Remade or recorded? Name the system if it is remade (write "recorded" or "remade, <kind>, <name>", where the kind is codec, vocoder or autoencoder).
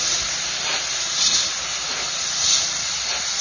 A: recorded